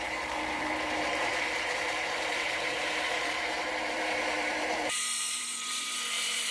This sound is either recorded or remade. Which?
remade